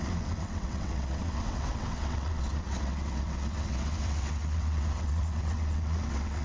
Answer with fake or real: fake